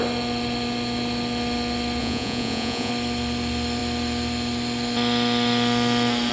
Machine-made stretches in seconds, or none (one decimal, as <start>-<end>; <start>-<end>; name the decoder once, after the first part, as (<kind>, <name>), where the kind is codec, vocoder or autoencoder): 2.0-2.9 (vocoder, Vocos)